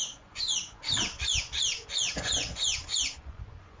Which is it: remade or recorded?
remade